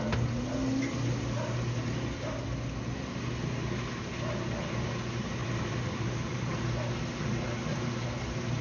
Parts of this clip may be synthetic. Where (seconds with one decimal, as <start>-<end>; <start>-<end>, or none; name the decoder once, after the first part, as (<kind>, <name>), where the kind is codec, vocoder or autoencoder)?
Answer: 5.4-6.5 (vocoder, BigVGAN v2)